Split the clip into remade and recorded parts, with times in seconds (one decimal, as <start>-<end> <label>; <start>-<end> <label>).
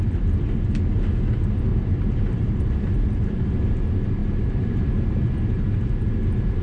0.0-1.7 recorded; 1.7-3.4 remade; 3.4-4.2 recorded; 4.2-5.2 remade; 5.2-6.6 recorded